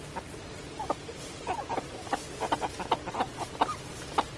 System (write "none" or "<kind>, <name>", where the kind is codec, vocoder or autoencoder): none